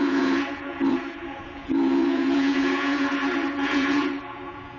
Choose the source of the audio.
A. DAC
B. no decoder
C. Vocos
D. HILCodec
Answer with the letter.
C